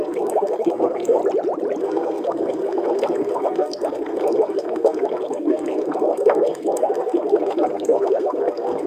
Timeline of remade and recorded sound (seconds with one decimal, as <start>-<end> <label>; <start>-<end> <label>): 0.0-1.2 remade; 1.2-1.8 recorded; 1.8-8.9 remade